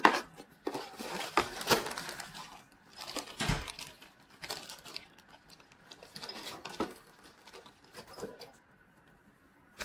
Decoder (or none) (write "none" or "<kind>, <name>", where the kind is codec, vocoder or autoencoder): none